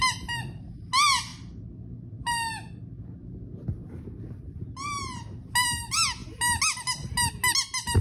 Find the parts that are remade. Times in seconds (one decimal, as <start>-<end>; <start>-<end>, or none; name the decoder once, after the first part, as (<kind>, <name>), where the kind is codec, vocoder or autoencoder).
none